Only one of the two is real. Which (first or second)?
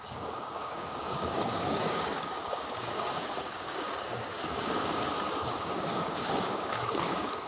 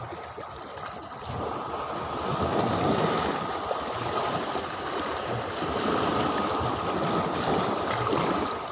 second